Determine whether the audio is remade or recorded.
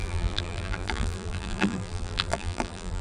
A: remade